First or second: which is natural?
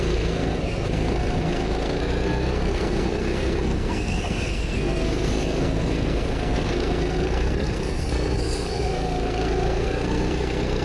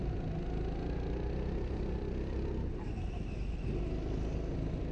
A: second